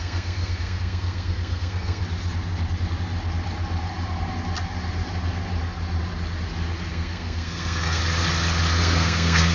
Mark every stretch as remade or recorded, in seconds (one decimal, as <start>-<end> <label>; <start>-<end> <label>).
0.0-2.0 remade; 2.0-6.9 recorded; 6.9-8.0 remade; 8.0-8.8 recorded; 8.8-9.5 remade